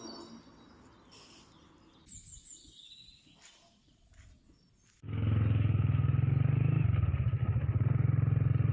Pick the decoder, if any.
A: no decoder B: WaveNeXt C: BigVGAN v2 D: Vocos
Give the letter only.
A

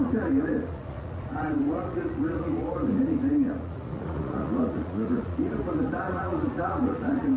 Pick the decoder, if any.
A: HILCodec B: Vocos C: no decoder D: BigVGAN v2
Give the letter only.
B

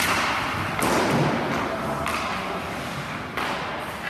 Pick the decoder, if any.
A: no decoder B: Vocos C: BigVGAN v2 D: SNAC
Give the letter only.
A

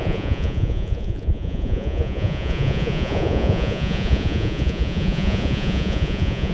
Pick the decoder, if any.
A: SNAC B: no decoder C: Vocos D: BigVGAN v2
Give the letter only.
C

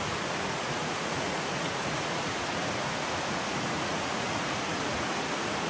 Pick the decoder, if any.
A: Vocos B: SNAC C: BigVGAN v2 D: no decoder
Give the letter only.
A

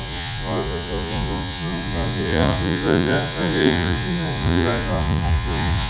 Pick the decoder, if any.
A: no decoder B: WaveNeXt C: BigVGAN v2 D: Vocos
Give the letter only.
D